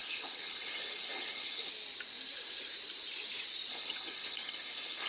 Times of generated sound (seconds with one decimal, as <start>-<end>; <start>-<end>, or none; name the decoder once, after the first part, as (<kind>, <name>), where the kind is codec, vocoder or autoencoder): 0.0-1.7 (codec, HILCodec); 3.7-5.1